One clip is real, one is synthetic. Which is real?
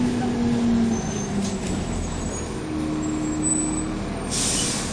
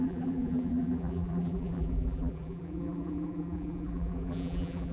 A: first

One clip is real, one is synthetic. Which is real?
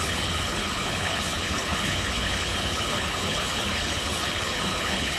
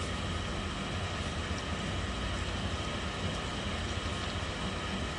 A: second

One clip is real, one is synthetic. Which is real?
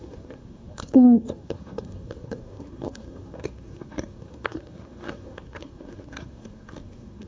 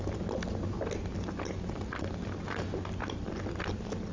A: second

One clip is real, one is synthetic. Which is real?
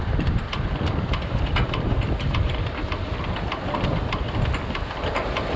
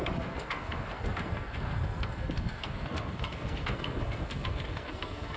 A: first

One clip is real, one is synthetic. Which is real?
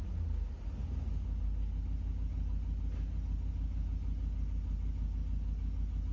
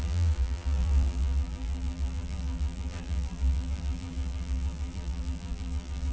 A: first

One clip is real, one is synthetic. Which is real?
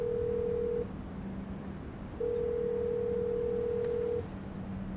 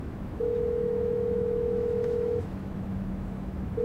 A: first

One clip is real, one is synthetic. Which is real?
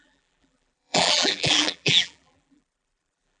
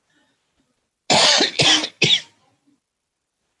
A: second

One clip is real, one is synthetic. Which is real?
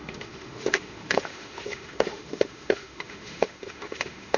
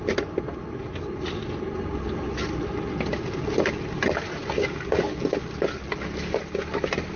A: second